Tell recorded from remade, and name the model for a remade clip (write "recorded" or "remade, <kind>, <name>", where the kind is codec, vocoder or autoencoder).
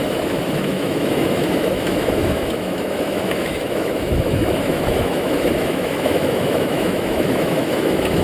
remade, autoencoder, DAC-VAE